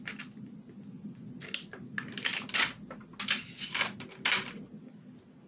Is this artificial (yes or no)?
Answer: no